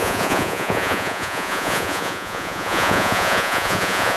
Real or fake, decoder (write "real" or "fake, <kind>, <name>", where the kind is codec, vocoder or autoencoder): fake, vocoder, Vocos